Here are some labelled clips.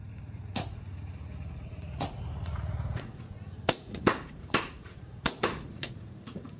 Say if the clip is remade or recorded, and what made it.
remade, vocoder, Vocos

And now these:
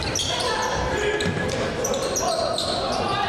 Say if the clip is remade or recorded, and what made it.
recorded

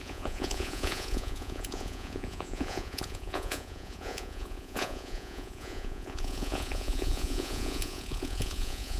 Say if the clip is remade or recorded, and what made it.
remade, vocoder, Vocos